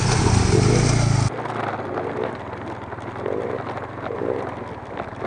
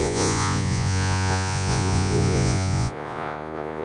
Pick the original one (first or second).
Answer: first